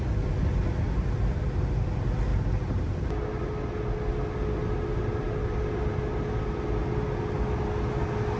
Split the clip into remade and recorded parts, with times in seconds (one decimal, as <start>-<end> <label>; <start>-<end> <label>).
0.0-8.4 recorded